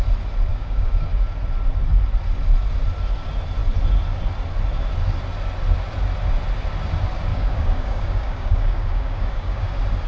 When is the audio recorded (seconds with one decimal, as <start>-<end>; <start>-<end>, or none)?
0.0-0.5; 1.1-7.3; 9.7-10.1